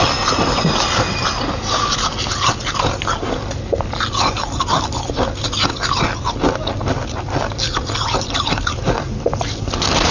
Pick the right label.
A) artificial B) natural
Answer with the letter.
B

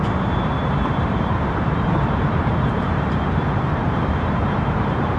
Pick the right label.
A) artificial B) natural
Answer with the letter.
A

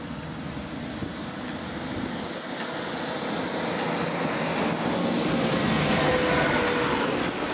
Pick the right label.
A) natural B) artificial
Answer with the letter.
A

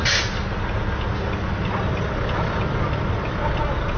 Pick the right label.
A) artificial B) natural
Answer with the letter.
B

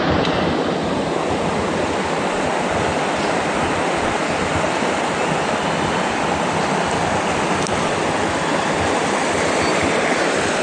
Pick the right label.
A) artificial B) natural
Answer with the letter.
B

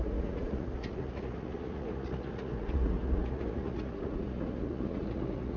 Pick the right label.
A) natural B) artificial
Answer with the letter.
B